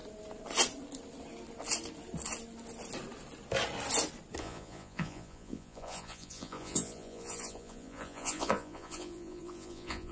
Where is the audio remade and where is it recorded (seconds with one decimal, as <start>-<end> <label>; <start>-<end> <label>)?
0.0-4.4 recorded; 4.4-10.1 remade